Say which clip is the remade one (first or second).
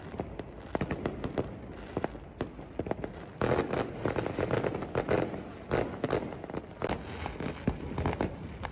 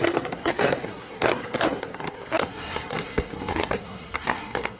second